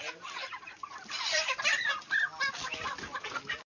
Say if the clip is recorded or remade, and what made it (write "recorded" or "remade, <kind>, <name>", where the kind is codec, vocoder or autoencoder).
remade, vocoder, BigVGAN v2